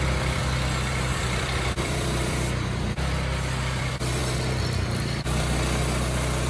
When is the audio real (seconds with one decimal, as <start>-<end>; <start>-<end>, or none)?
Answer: 0.4-0.9; 4.2-6.5